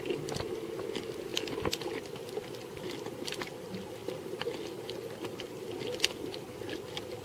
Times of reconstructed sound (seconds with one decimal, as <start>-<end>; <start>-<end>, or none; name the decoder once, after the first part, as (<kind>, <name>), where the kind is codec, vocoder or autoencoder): 1.3-2.3 (vocoder, BigVGAN v2); 4.0-4.6